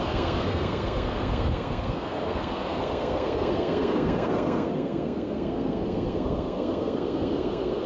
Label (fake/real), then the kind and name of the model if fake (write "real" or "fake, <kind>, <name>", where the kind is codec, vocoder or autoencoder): fake, codec, SNAC